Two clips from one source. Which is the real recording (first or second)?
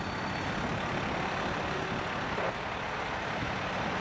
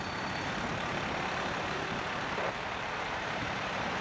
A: first